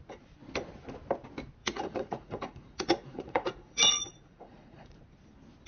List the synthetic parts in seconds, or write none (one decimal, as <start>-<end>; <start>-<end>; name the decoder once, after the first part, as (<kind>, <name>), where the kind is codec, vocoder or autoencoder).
1.6-5.0 (vocoder, Vocos)